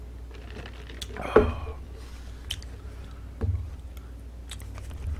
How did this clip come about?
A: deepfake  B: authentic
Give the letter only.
B